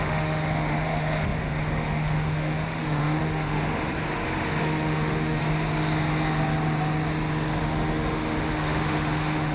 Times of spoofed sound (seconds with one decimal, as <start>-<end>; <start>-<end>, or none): 0.0-3.9; 4.6-5.4; 7.6-9.5